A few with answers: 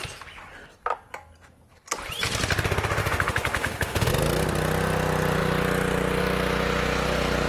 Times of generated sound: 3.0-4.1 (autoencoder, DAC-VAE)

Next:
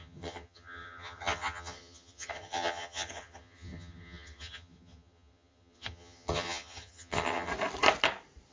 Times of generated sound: 0.0-7.5 (vocoder, HiFi-GAN)

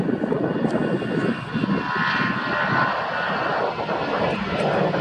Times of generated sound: none